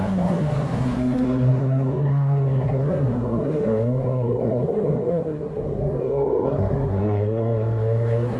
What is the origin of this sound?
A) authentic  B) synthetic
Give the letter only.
B